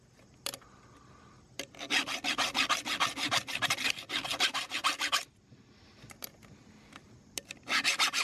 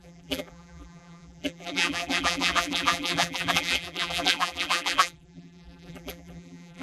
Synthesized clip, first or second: second